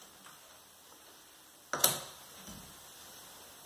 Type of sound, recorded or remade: recorded